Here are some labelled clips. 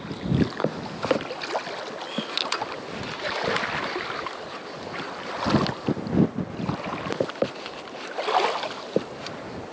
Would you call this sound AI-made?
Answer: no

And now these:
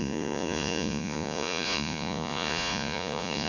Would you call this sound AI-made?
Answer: yes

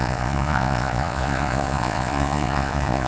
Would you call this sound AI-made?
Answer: yes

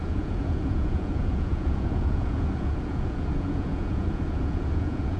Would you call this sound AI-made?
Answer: yes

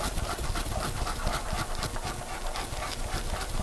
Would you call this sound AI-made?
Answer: no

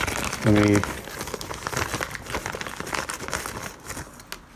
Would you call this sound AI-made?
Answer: no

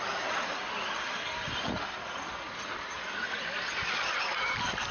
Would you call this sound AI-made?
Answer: no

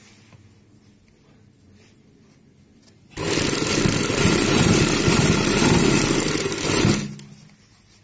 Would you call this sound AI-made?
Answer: no